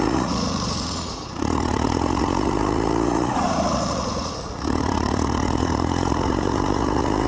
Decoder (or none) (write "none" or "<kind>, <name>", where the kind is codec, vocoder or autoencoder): vocoder, Vocos